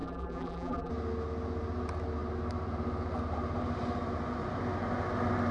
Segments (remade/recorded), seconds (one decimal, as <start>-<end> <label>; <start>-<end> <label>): 0.0-0.9 remade; 0.9-5.5 recorded